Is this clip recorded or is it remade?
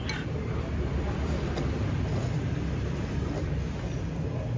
recorded